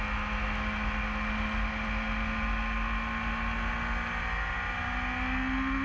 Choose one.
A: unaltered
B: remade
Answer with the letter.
A